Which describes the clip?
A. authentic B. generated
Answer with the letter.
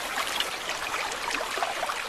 A